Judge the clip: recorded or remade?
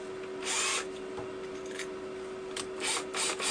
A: recorded